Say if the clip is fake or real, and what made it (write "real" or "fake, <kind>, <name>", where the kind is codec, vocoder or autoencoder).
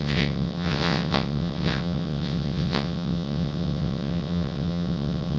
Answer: fake, vocoder, WaveNeXt